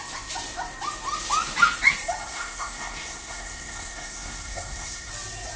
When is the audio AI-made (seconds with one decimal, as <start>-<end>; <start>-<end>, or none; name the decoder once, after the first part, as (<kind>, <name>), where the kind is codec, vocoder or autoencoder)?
2.2-5.1 (codec, SNAC)